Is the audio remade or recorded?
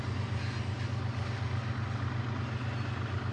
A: recorded